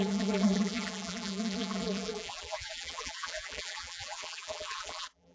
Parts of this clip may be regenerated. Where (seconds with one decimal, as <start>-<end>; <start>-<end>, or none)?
0.0-5.3